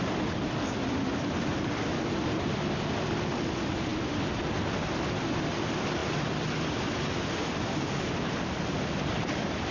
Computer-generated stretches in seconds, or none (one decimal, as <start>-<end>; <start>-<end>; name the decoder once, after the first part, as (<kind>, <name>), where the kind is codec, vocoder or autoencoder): none